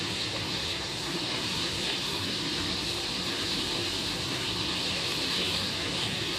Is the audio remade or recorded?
remade